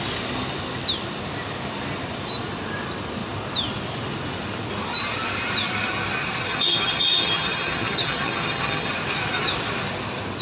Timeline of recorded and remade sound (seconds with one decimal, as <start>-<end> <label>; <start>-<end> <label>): 0.0-6.5 recorded; 6.5-8.9 remade; 8.9-10.4 recorded